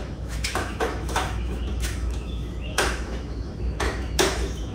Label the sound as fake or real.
fake